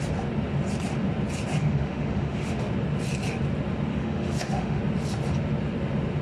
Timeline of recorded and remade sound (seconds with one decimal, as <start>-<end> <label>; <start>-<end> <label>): 0.0-1.6 recorded; 1.6-2.7 remade; 2.7-3.9 recorded; 3.9-4.8 remade; 4.8-6.2 recorded